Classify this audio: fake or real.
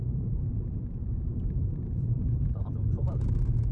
fake